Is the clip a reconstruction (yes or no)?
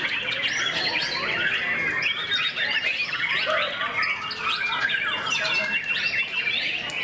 no